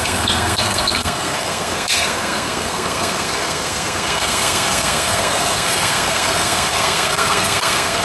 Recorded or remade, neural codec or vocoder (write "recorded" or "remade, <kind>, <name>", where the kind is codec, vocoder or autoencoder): remade, codec, SNAC